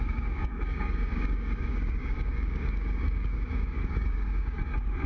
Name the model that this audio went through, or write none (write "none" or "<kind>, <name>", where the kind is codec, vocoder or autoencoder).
codec, DAC